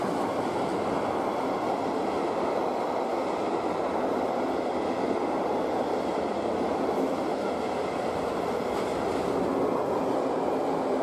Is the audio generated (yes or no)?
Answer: no